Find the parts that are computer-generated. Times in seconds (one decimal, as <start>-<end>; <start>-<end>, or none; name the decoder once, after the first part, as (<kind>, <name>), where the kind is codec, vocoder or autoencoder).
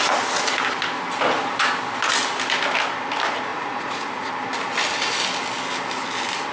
3.5-4.3 (vocoder, Vocos)